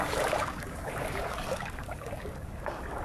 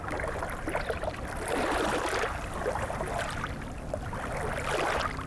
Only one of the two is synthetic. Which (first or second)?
first